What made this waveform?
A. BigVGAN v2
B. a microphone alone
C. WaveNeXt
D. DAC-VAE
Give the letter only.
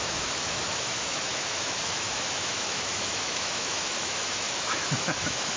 D